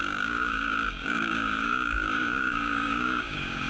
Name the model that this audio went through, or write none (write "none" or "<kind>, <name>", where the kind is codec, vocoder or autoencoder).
codec, DAC